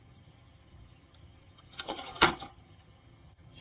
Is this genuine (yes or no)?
no